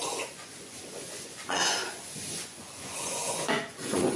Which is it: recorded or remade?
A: remade